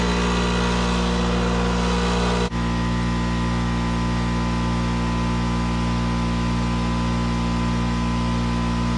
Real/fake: real